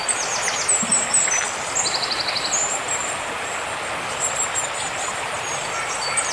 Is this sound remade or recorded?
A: recorded